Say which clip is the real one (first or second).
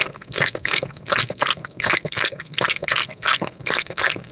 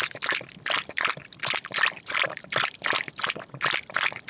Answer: second